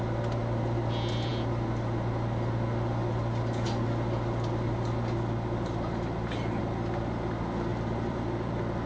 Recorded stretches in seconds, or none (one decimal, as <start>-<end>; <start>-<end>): 0.0-7.7